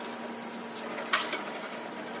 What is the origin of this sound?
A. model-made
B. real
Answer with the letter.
B